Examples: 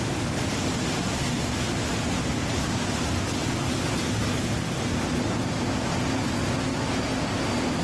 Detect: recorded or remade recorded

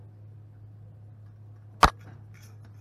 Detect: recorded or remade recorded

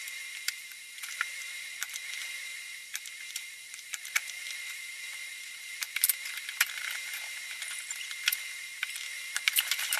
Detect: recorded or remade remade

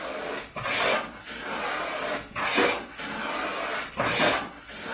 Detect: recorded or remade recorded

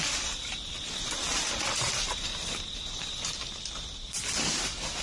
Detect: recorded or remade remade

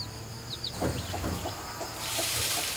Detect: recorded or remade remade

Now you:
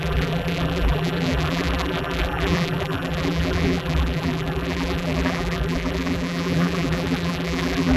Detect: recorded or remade remade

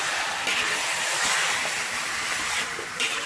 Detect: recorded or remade recorded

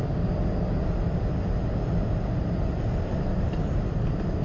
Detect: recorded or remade remade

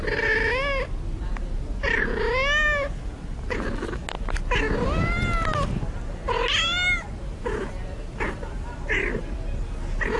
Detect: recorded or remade recorded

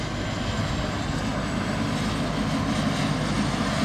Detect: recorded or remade recorded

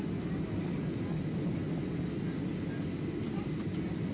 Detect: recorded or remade recorded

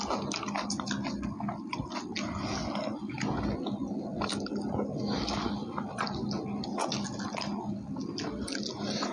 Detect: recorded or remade recorded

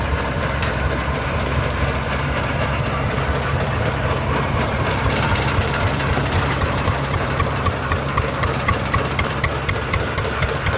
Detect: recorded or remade remade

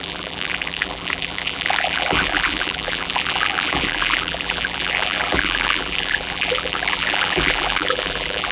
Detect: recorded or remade remade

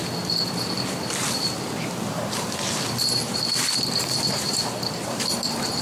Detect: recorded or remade remade